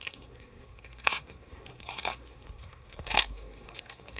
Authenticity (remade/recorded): remade